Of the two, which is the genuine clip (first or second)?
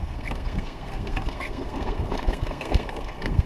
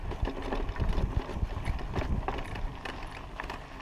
second